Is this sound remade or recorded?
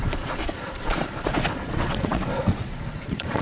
remade